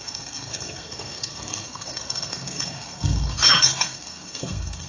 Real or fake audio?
fake